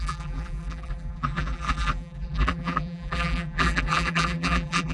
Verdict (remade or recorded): remade